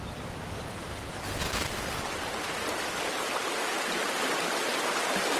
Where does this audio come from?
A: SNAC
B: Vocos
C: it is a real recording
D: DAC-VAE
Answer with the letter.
C